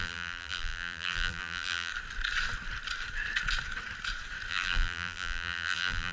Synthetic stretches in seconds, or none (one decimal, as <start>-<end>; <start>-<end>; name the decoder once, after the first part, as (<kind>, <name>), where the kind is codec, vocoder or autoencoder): 0.0-1.9 (vocoder, BigVGAN v2); 4.5-6.1

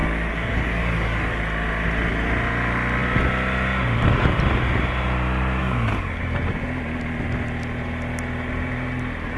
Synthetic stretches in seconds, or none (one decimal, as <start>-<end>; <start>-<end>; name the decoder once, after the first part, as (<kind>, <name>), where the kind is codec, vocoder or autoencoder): 0.0-1.4 (codec, DAC); 5.6-6.2

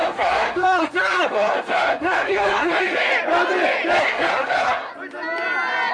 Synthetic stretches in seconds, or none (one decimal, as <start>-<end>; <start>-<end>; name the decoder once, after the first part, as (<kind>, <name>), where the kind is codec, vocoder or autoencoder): 0.0-3.1 (codec, SNAC); 4.0-4.9

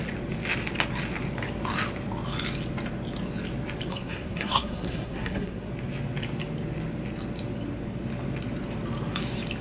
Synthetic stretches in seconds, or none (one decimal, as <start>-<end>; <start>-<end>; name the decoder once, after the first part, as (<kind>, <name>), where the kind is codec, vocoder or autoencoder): 3.9-5.7 (codec, SNAC)

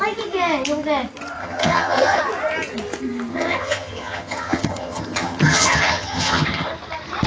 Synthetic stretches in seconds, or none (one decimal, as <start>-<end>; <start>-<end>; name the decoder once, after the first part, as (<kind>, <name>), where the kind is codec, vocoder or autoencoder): 1.4-2.2 (vocoder, HiFi-GAN); 3.3-6.7